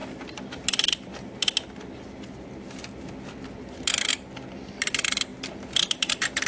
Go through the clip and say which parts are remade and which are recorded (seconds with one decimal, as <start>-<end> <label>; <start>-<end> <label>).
0.0-6.5 recorded